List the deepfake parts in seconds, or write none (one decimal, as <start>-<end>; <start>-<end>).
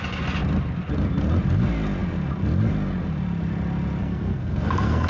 4.0-5.1